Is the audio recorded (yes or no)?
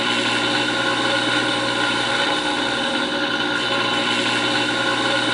yes